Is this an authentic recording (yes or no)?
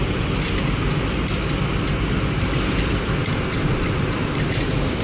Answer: yes